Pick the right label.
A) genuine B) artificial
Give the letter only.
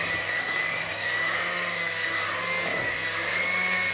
B